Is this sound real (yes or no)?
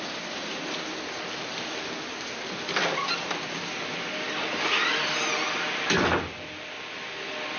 yes